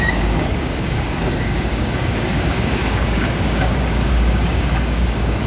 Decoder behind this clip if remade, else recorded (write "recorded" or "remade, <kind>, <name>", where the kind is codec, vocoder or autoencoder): remade, codec, DAC